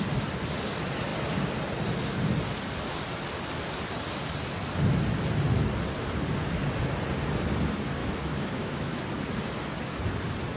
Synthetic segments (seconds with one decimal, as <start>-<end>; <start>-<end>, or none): 8.0-9.0